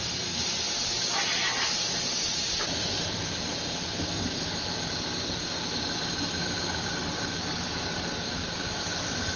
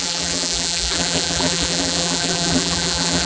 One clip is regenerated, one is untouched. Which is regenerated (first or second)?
second